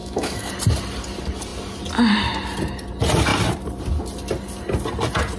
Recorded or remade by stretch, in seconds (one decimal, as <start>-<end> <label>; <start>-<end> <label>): 0.0-0.5 remade; 0.5-5.4 recorded